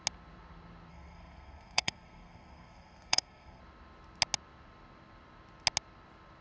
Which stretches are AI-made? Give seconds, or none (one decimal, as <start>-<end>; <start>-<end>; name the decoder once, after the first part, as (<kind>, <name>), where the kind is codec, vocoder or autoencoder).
0.9-3.6 (codec, SNAC)